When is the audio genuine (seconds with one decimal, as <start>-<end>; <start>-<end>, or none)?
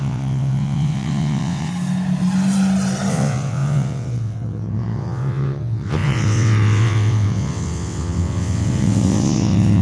1.7-3.1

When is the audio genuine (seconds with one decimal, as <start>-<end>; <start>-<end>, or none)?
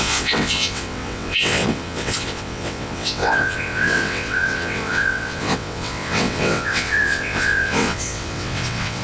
none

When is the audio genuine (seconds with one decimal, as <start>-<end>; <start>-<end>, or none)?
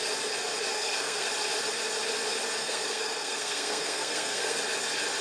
0.0-0.7; 1.3-2.6; 4.6-5.2